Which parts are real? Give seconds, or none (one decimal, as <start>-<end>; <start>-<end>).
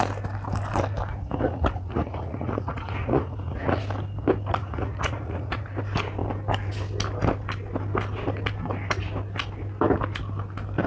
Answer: 0.0-1.1; 3.8-4.6; 5.7-10.9